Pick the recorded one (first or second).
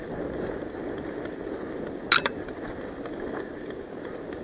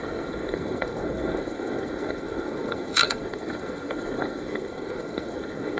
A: first